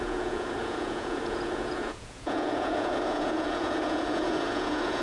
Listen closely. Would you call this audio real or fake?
fake